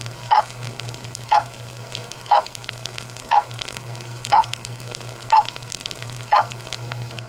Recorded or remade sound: remade